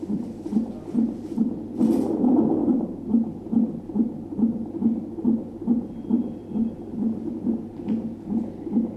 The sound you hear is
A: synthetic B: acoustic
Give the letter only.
A